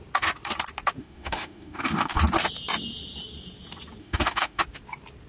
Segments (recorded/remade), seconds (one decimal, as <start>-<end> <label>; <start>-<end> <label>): 0.0-1.0 recorded; 1.0-2.2 remade; 2.2-4.0 recorded; 4.0-4.6 remade; 4.6-5.3 recorded